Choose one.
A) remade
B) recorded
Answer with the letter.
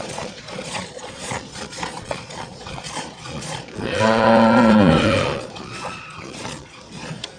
A